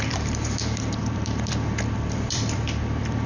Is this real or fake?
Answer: fake